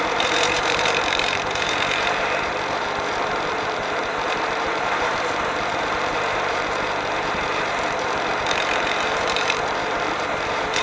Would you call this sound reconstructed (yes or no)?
yes